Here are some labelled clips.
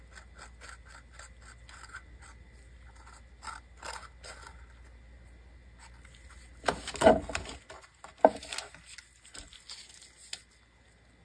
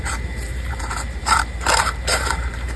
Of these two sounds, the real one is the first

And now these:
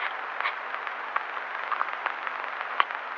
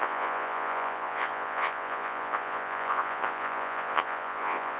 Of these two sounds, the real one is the first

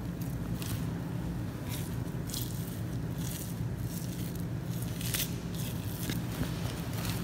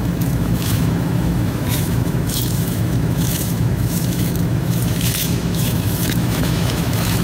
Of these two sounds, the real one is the first